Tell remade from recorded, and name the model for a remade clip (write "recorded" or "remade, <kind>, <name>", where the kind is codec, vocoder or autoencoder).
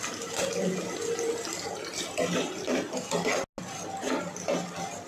recorded